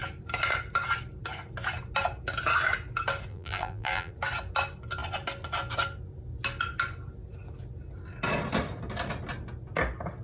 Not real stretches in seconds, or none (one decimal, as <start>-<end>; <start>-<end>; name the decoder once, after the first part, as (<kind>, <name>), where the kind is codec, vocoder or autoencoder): 3.3-4.1 (vocoder, BigVGAN v2)